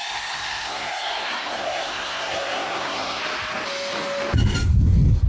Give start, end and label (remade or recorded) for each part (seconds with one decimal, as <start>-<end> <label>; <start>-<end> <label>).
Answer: 0.0-3.2 remade; 3.2-5.3 recorded